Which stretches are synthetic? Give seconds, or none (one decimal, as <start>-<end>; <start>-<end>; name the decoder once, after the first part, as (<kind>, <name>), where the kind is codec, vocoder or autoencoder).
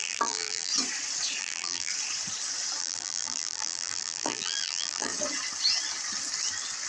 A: 0.0-0.7 (vocoder, BigVGAN v2); 1.4-1.9; 2.8-5.1